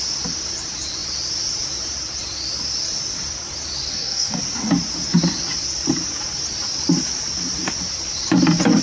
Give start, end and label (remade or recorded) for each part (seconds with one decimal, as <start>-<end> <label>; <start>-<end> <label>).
0.0-3.9 recorded; 3.9-4.4 remade; 4.4-8.8 recorded